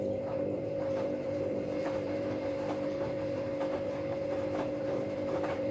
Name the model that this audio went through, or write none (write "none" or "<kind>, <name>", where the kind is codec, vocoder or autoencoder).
vocoder, BigVGAN v2